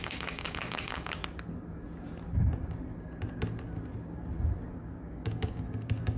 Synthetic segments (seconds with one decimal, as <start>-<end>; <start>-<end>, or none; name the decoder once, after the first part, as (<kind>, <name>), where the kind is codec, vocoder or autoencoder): 0.0-1.2 (codec, DAC); 4.7-6.2

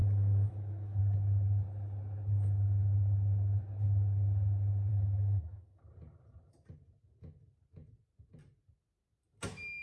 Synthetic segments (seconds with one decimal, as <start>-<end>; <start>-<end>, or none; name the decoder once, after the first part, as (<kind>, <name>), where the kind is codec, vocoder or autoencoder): 0.0-1.0 (autoencoder, DAC-VAE); 4.9-5.8

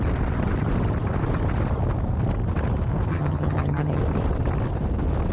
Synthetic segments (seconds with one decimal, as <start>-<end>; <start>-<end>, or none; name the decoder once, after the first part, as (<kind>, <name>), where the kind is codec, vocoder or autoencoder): 3.1-4.0 (vocoder, HiFi-GAN)

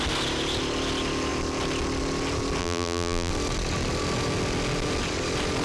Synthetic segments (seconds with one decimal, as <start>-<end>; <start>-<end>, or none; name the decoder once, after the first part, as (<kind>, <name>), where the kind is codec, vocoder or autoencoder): 2.6-3.3 (vocoder, BigVGAN v2)

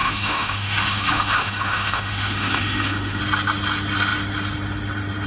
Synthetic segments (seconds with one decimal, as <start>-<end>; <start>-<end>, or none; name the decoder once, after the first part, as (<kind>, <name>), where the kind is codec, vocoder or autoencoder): 0.0-3.2 (autoencoder, DAC-VAE)

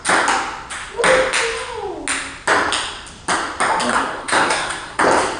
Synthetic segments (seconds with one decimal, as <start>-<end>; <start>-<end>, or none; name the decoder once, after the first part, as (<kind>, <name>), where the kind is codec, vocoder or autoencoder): 3.9-5.0 (codec, SNAC)

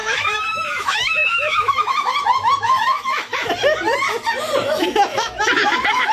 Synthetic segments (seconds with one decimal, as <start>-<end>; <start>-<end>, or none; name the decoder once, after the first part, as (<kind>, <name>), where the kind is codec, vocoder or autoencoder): 0.0-3.5 (autoencoder, DAC-VAE); 4.6-6.1